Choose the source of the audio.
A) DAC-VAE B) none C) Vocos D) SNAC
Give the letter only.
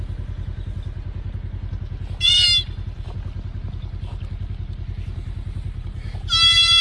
B